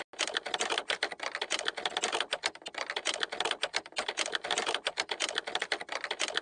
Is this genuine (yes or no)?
yes